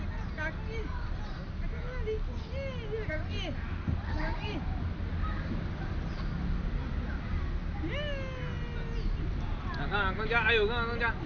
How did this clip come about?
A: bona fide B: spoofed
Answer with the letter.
A